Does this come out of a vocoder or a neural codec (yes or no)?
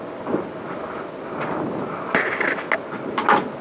no